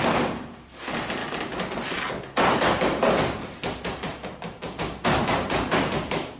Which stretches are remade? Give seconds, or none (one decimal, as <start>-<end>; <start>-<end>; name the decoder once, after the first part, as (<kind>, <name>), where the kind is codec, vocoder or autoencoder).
0.0-1.2 (vocoder, BigVGAN v2); 2.7-4.1; 5.6-6.4